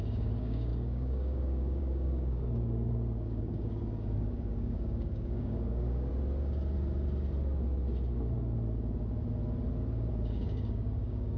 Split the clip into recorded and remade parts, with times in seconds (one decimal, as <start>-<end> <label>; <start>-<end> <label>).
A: 0.0-6.1 remade; 6.1-10.1 recorded; 10.1-11.4 remade